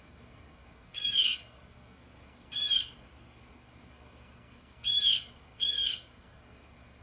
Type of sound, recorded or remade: remade